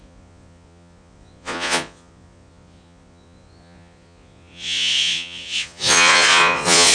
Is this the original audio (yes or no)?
no